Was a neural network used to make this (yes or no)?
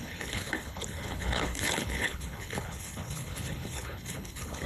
yes